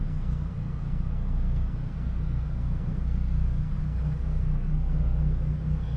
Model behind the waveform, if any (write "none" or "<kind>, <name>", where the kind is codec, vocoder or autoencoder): codec, SNAC